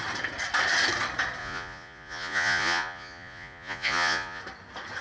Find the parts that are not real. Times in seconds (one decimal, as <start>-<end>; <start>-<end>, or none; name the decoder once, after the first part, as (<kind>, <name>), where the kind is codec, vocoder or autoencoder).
1.4-4.4 (vocoder, Vocos)